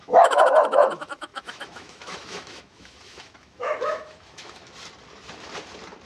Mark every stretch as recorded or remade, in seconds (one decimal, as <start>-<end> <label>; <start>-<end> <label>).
0.0-4.6 remade; 4.6-6.1 recorded